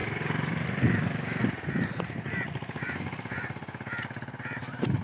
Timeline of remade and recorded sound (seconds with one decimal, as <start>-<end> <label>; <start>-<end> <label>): 0.0-5.0 recorded